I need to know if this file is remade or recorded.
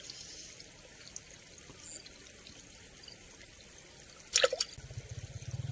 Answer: recorded